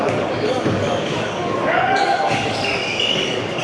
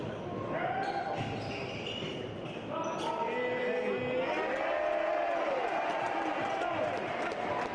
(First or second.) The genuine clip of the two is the second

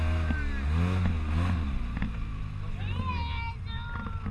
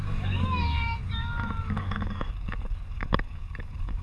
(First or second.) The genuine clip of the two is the first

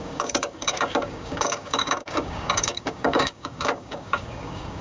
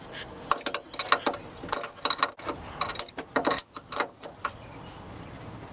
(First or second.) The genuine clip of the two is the second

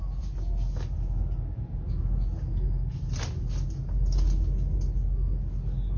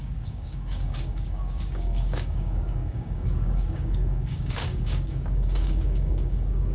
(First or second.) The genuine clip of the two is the first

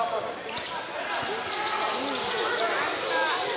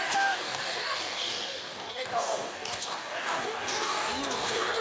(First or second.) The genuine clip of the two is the first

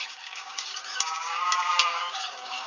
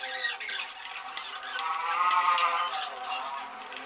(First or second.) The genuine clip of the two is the second